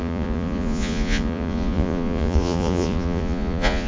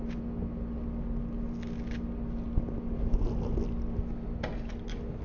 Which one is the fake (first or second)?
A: first